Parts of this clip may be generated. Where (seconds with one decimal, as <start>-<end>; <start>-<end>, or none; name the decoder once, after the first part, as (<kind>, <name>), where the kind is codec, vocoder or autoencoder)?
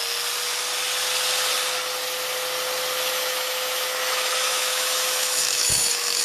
3.1-6.2 (autoencoder, DAC-VAE)